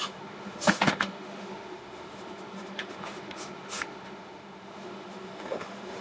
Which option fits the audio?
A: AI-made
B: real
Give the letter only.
A